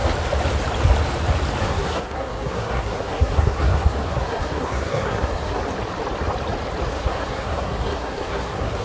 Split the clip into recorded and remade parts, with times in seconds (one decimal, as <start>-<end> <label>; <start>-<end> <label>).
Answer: 0.0-1.6 recorded; 1.6-5.6 remade; 5.6-6.9 recorded; 6.9-8.8 remade